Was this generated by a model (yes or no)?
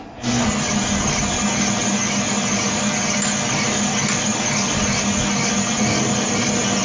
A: no